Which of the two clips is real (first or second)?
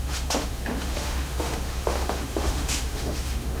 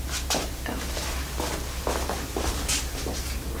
second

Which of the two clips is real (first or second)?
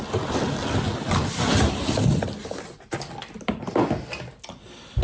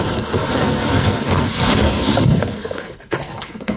first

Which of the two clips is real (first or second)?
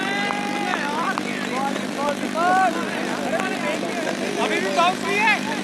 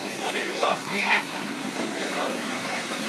first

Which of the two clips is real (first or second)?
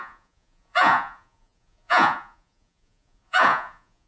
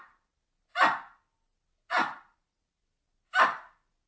second